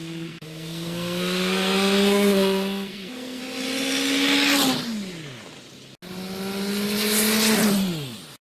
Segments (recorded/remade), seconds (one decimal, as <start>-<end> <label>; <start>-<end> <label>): 0.0-3.4 remade; 3.4-8.4 recorded

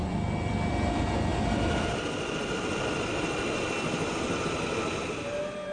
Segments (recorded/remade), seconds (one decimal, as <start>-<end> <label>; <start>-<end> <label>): 0.0-5.7 recorded

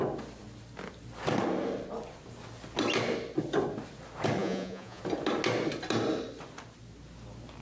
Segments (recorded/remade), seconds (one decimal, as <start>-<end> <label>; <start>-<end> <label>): 0.0-4.4 recorded; 4.4-5.0 remade; 5.0-7.6 recorded

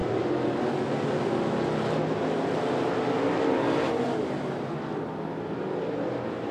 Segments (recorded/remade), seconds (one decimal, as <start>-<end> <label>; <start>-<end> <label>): 0.0-6.5 recorded

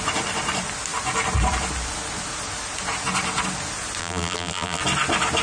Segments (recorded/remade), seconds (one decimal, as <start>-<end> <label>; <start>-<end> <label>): 0.0-4.0 recorded; 4.0-4.8 remade; 4.8-5.4 recorded

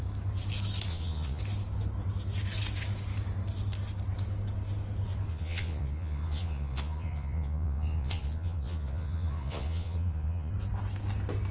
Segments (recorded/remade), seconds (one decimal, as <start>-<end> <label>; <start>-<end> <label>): 0.0-0.9 recorded; 0.9-1.4 remade; 1.4-5.3 recorded; 5.3-10.5 remade; 10.5-11.5 recorded

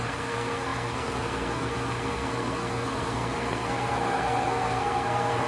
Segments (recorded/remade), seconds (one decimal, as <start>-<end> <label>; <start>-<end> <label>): 0.0-5.5 remade

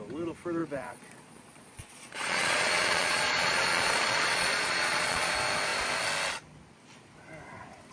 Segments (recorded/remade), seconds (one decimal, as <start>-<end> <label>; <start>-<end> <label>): 0.0-0.6 recorded; 0.6-5.3 remade; 5.3-7.9 recorded